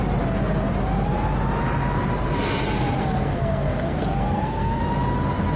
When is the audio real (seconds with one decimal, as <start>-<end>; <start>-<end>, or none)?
0.0-3.0; 4.8-5.6